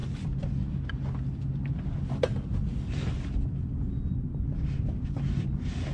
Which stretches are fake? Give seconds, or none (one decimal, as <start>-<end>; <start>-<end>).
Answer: none